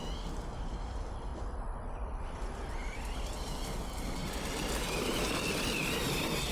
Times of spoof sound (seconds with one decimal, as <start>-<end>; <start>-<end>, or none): none